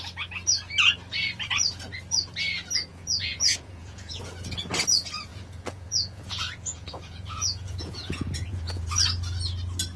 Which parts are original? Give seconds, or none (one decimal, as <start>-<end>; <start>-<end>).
0.0-2.9; 4.2-5.3; 8.9-10.0